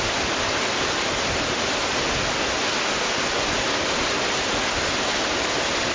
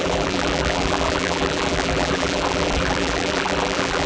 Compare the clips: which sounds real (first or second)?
first